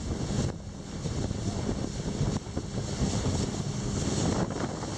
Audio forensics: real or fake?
real